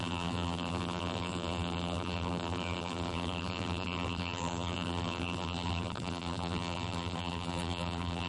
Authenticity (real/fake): fake